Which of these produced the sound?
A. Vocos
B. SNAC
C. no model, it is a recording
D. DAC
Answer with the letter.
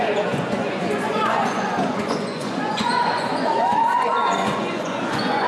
A